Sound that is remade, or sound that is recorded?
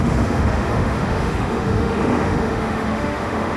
remade